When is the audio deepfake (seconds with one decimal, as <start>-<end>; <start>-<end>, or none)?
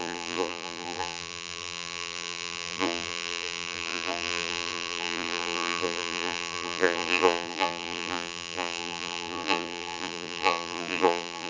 0.0-11.5